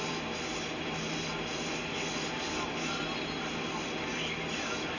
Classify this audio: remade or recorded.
recorded